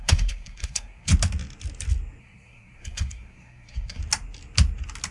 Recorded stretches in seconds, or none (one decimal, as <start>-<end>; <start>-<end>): 1.1-2.2; 4.0-5.1